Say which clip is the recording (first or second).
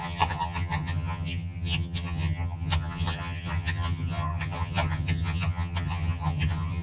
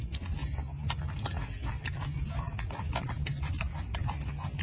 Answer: second